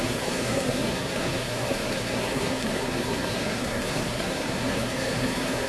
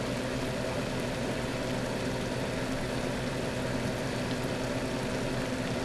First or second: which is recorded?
second